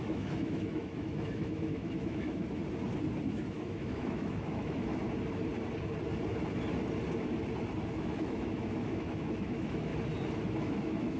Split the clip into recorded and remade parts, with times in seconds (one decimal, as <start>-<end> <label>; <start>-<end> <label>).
0.0-2.6 remade; 2.6-3.3 recorded; 3.3-5.0 remade; 5.0-7.9 recorded; 7.9-9.9 remade; 9.9-10.6 recorded; 10.6-11.2 remade